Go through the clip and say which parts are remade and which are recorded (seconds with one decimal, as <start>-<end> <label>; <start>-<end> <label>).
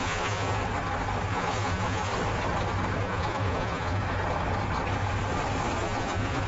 0.0-0.6 remade; 0.6-1.3 recorded; 1.3-2.1 remade; 2.1-3.0 recorded; 3.0-4.0 remade; 4.0-5.8 recorded; 5.8-6.5 remade